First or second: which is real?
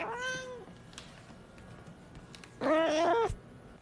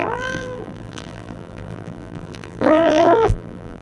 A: first